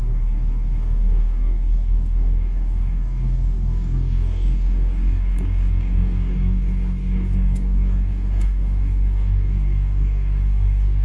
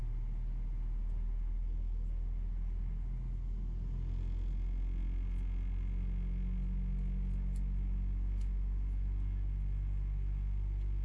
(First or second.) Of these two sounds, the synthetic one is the first